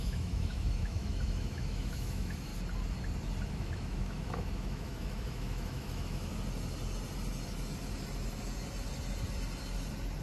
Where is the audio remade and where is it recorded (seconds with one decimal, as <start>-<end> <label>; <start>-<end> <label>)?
0.0-2.5 remade; 2.5-3.5 recorded; 3.5-6.3 remade; 6.3-10.2 recorded